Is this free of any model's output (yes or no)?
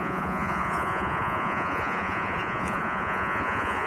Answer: no